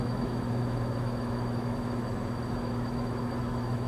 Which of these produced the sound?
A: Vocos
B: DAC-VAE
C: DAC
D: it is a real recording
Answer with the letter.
B